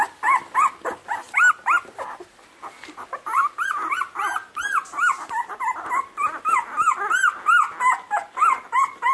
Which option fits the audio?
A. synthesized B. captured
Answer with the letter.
B